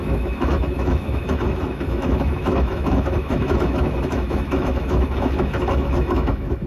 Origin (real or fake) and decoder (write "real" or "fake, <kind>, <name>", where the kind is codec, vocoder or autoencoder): fake, autoencoder, DAC-VAE